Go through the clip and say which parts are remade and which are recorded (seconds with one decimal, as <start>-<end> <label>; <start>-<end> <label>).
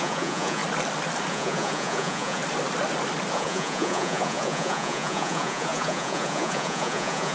0.0-0.6 remade; 0.6-1.3 recorded; 1.3-2.4 remade; 2.4-3.3 recorded; 3.3-7.3 remade